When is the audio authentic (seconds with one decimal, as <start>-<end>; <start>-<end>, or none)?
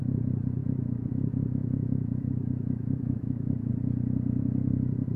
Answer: 0.0-0.6; 3.7-5.2